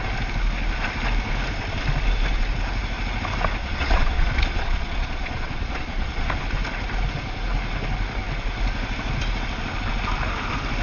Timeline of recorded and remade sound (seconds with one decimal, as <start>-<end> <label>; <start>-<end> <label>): 0.0-3.6 recorded; 3.6-6.3 remade; 6.3-10.8 recorded